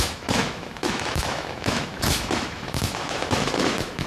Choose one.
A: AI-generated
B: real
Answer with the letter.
A